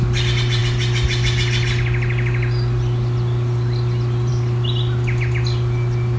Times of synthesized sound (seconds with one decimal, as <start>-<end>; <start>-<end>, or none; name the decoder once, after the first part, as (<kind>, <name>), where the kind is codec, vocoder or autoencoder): none